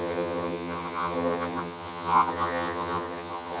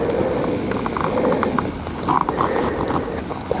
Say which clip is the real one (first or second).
second